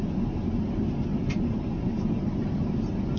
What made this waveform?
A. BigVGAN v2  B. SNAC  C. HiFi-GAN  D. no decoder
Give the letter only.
D